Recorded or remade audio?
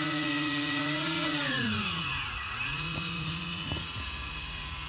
remade